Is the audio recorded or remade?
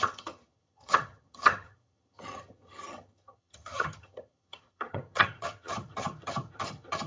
remade